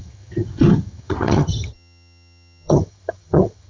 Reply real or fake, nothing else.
fake